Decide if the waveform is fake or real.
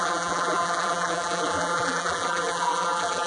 fake